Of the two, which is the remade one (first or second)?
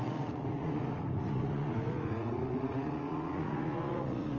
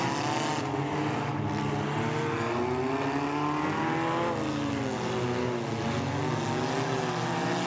first